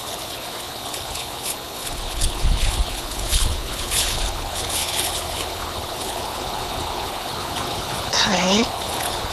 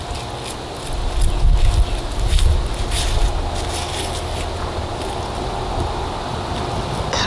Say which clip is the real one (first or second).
second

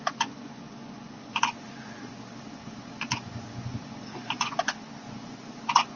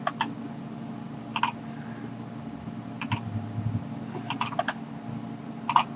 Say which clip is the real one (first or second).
second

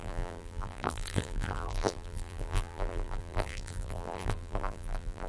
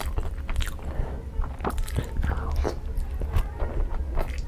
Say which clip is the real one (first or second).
second